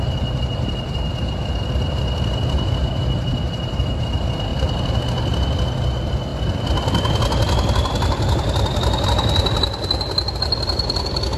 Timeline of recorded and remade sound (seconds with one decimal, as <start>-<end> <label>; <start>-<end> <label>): 0.0-4.5 recorded; 4.5-5.0 remade; 5.0-11.4 recorded